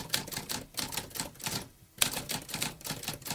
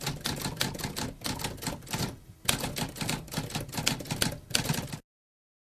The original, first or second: second